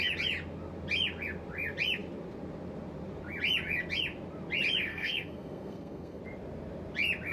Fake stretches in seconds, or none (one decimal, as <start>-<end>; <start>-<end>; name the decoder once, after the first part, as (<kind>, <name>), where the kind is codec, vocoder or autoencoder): 4.9-6.2 (codec, SNAC)